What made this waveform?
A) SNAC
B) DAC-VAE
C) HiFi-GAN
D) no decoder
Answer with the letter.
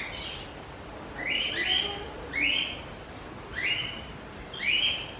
D